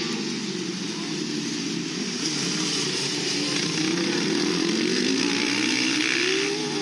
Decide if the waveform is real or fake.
real